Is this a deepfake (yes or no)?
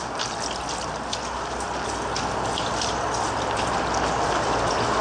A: no